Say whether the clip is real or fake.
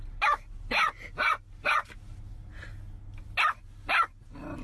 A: real